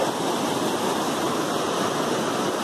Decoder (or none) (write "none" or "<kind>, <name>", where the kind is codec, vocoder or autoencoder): none